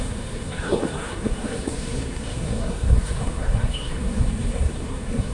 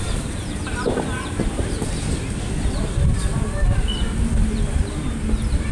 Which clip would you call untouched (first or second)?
second